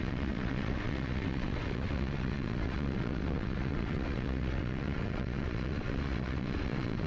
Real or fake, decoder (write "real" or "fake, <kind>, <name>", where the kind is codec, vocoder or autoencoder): fake, vocoder, WaveNeXt